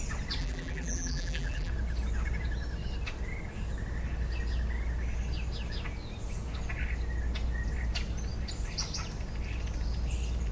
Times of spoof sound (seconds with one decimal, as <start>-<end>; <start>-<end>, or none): 0.4-1.7

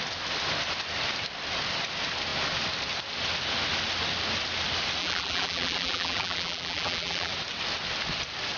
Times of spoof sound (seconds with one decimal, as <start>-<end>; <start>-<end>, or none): 5.0-7.3

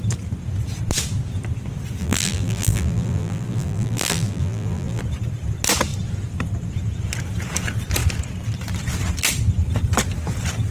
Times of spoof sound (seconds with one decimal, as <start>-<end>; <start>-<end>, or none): 2.0-5.0

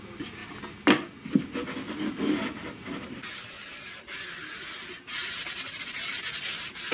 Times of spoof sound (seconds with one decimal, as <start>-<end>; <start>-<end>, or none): 0.0-0.4; 3.8-6.9

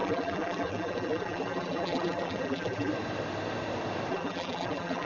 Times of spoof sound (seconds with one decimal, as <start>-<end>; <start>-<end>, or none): 0.0-2.9; 4.1-5.1

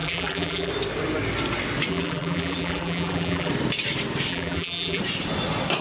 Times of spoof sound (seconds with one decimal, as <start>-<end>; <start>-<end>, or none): 0.0-0.7; 1.9-3.5; 4.3-5.0